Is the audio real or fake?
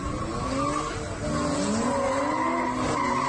real